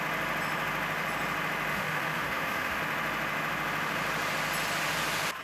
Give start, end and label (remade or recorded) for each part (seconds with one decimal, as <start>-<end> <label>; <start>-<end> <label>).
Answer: 0.0-1.7 recorded; 1.7-2.8 remade; 2.8-5.4 recorded